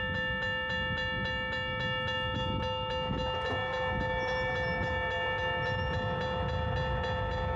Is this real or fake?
real